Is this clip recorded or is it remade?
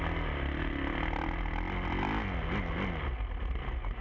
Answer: recorded